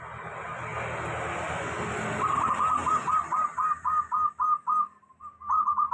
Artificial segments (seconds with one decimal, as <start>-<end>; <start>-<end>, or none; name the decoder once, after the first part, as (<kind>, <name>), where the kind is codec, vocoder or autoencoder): none